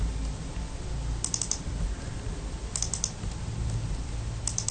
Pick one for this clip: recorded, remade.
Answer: recorded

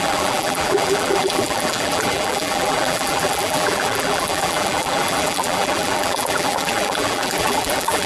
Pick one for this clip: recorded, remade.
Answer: remade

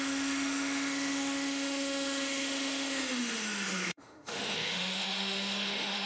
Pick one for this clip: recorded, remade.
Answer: remade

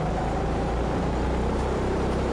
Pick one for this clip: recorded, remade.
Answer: remade